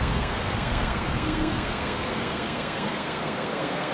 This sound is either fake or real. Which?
fake